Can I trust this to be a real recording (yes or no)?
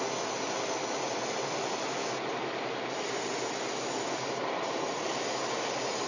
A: yes